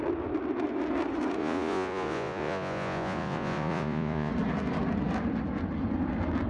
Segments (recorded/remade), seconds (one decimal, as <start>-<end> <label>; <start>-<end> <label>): 0.0-1.4 recorded; 1.4-4.3 remade; 4.3-6.5 recorded